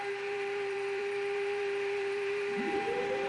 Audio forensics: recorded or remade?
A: remade